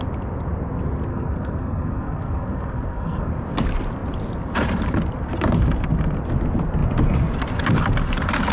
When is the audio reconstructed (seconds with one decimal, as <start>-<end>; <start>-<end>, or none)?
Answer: 1.1-3.3